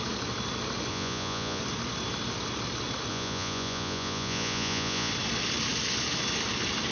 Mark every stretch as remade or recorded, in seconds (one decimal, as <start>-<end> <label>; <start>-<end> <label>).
0.0-0.9 recorded; 0.9-1.6 remade; 1.6-3.1 recorded; 3.1-5.1 remade; 5.1-6.9 recorded